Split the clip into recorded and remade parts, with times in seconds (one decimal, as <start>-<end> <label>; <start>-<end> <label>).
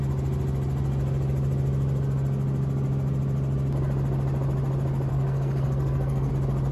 0.0-5.1 recorded; 5.1-6.3 remade; 6.3-6.7 recorded